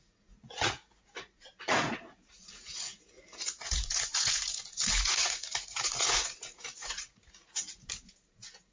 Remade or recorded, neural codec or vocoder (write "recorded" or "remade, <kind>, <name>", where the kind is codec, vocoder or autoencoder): remade, vocoder, Vocos